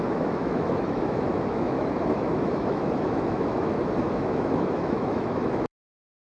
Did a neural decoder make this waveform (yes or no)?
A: yes